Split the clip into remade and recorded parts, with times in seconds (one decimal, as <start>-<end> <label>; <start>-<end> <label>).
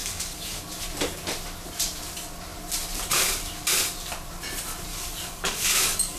0.0-0.6 remade; 0.6-4.9 recorded; 4.9-6.2 remade